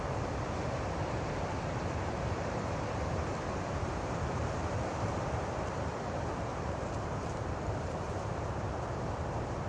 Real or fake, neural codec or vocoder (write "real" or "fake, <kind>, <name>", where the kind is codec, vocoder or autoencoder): fake, vocoder, BigVGAN v2